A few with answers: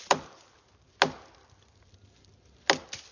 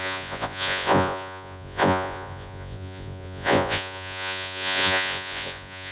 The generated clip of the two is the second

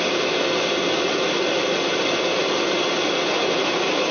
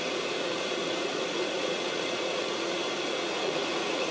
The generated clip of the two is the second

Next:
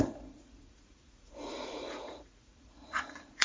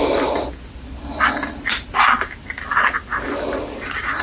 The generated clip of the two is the first